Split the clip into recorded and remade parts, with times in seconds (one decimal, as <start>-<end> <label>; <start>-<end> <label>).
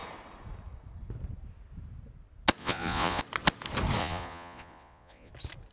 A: 0.0-2.6 recorded; 2.6-3.2 remade; 3.2-4.0 recorded; 4.0-5.3 remade; 5.3-5.7 recorded